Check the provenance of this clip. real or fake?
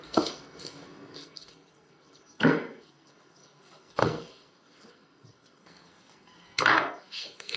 fake